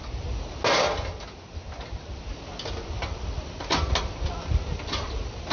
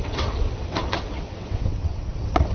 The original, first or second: first